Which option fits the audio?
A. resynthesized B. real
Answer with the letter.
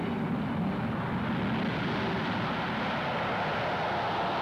B